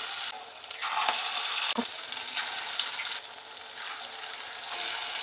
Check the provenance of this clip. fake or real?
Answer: real